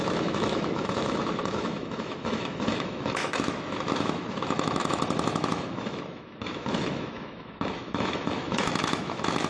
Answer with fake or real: fake